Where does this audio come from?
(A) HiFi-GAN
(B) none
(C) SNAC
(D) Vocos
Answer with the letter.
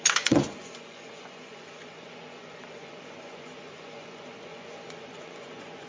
D